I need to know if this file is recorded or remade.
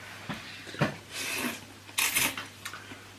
recorded